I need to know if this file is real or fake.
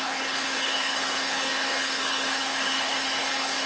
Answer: fake